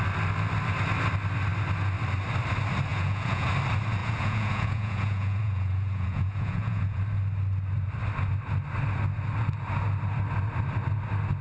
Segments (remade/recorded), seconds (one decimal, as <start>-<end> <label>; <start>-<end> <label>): 0.0-2.9 recorded; 2.9-3.5 remade; 3.5-4.0 recorded; 4.0-7.0 remade; 7.0-11.4 recorded